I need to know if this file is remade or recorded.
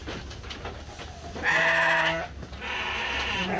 recorded